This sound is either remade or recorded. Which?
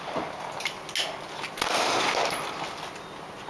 recorded